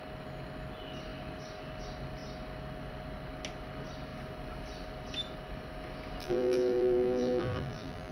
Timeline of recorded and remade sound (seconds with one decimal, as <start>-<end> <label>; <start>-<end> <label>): 0.0-6.2 recorded; 6.2-8.1 remade